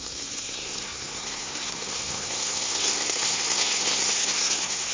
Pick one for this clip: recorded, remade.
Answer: remade